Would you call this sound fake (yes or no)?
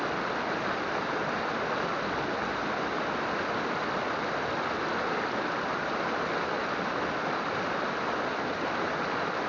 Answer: no